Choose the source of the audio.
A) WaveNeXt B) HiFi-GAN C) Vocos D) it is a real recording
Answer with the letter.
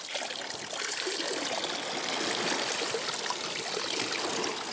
D